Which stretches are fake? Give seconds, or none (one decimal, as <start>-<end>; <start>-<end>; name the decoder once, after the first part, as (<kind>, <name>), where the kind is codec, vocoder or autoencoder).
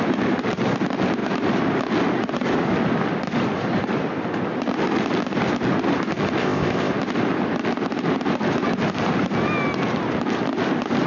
6.4-6.9 (codec, ZipCodec)